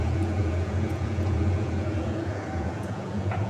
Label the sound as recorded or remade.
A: remade